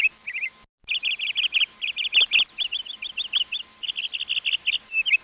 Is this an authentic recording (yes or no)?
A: yes